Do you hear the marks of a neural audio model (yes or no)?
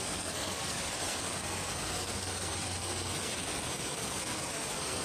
yes